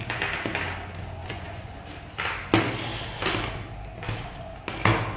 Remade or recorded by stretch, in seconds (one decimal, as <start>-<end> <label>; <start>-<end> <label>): 0.0-1.2 recorded; 1.2-1.8 remade; 1.8-5.2 recorded